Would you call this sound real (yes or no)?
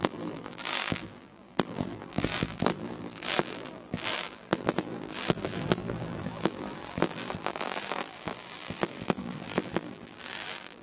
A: no